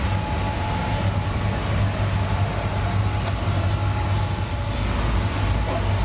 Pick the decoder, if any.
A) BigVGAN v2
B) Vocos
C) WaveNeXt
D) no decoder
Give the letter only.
D